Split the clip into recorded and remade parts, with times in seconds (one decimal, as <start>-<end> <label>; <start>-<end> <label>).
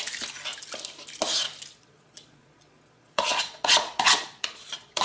0.0-1.7 recorded; 1.7-5.0 remade